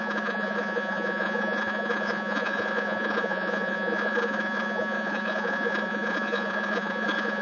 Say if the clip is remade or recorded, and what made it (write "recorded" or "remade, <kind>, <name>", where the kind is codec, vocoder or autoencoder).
remade, vocoder, Vocos